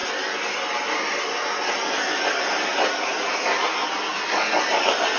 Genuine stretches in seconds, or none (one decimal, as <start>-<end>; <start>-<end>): 0.0-5.2